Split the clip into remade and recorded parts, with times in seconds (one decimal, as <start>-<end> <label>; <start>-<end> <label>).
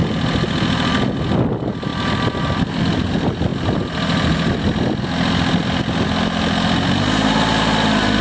0.0-8.2 recorded